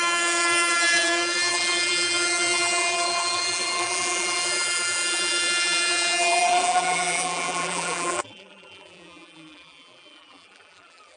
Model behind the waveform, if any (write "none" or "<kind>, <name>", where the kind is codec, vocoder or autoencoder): vocoder, BigVGAN v2